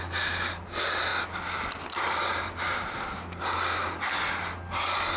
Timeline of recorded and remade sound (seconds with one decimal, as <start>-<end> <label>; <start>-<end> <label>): 0.0-5.2 recorded